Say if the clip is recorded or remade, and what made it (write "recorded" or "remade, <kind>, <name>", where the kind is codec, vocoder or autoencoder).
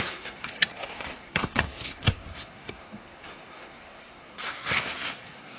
remade, codec, SNAC